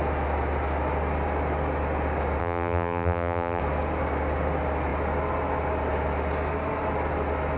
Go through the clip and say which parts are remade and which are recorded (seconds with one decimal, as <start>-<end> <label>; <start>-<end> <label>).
0.0-2.4 recorded; 2.4-3.6 remade; 3.6-7.6 recorded